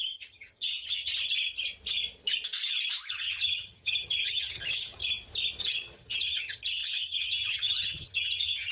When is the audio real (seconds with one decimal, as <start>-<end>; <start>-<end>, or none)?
1.1-3.1; 5.0-5.6